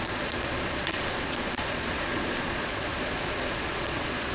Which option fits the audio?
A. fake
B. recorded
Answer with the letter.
A